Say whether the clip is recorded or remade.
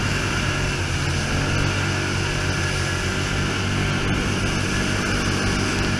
recorded